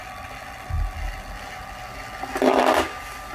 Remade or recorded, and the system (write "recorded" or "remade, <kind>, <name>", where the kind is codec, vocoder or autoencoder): recorded